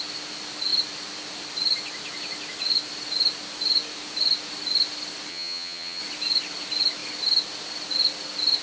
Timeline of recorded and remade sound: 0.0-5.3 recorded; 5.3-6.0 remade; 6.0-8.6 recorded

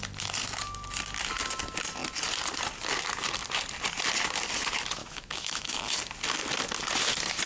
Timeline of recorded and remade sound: 0.0-5.0 recorded; 5.0-5.8 remade; 5.8-7.5 recorded

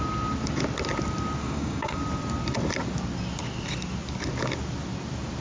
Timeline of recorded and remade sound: 0.0-1.4 recorded; 1.4-2.0 remade; 2.0-5.4 recorded